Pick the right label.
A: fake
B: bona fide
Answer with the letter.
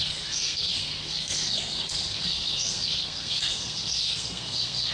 A